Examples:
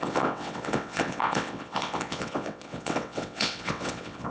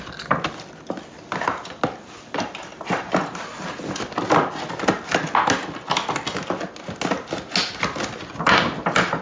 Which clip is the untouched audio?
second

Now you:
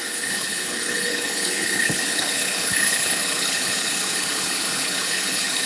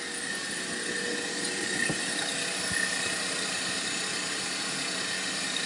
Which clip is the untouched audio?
second